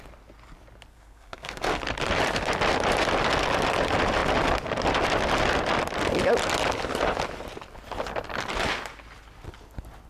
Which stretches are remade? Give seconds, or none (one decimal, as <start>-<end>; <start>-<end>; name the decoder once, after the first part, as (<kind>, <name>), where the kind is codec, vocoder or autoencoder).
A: 0.9-1.8 (codec, SNAC)